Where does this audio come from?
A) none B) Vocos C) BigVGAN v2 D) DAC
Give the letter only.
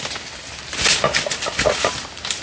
A